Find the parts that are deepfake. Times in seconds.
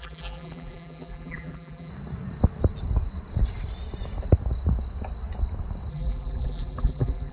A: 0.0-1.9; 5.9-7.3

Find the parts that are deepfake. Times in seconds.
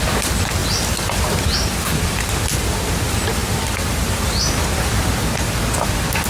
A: none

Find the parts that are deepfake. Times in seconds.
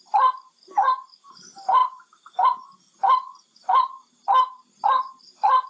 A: none